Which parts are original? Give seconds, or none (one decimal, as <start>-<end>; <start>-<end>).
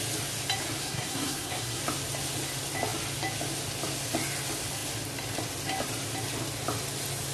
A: 0.0-0.8; 1.8-7.3